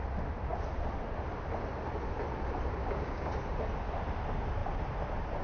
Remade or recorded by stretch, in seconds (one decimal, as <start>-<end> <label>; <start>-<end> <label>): 0.0-2.8 recorded; 2.8-3.3 remade; 3.3-5.4 recorded